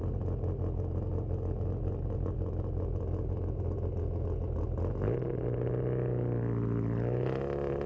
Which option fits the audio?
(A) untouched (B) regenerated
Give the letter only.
A